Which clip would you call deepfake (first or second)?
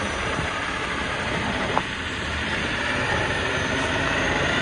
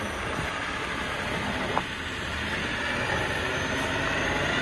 first